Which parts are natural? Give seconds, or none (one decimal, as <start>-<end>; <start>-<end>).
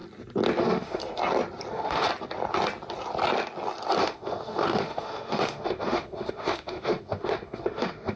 0.0-0.6; 1.0-1.7; 2.1-4.0